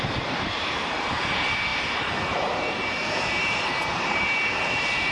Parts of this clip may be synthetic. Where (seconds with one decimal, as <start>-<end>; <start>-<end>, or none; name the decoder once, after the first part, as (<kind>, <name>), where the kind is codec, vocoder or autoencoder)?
0.0-5.1 (vocoder, BigVGAN v2)